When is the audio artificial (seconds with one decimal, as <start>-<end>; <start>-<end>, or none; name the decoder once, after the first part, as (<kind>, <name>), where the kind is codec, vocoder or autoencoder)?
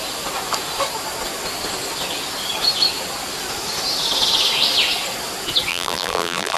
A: 5.7-6.6 (vocoder, BigVGAN v2)